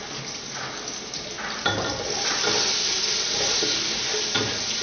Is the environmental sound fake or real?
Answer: real